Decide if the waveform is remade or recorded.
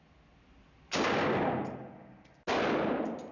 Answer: recorded